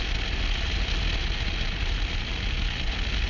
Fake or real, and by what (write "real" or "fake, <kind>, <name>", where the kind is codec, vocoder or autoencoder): real